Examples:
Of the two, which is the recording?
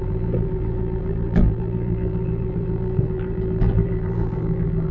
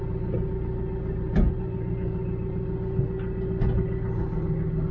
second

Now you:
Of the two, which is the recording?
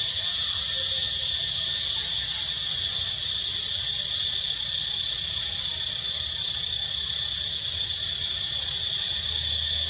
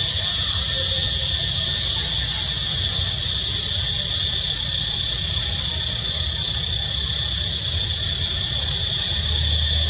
second